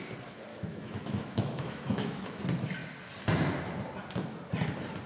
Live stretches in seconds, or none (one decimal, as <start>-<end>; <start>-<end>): 0.0-0.5; 2.4-5.1